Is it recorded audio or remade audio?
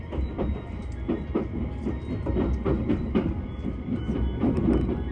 recorded